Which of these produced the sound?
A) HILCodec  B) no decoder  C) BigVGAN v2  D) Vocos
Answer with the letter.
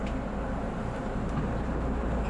C